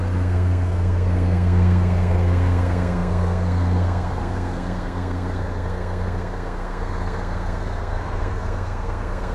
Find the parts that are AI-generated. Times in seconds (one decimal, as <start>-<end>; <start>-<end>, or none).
0.0-9.3